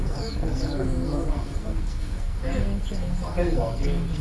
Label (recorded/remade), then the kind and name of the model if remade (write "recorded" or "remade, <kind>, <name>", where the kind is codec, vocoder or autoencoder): remade, codec, SNAC